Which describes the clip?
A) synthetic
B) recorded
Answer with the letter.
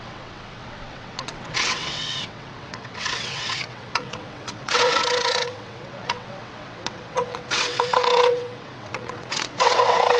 A